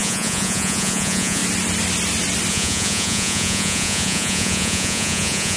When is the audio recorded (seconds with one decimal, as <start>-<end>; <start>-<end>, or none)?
1.4-2.5